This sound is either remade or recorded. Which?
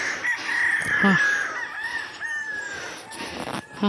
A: recorded